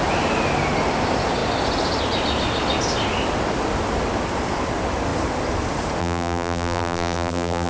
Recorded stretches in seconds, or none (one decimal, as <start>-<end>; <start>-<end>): 0.0-6.0